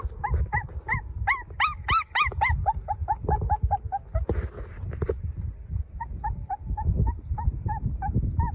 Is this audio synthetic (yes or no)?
no